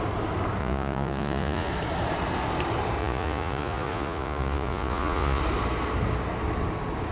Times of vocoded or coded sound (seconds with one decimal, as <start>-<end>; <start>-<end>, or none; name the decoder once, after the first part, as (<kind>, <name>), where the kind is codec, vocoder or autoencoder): 0.6-1.7 (vocoder, Vocos); 3.0-5.4